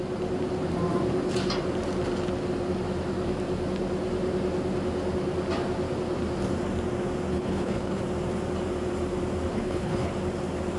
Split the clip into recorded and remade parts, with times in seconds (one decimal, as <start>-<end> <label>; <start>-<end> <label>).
0.0-7.3 recorded; 7.3-8.0 remade; 8.0-9.5 recorded; 9.5-10.1 remade; 10.1-10.8 recorded